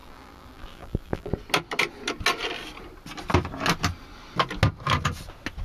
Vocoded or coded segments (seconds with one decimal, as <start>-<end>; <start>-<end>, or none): 0.0-1.3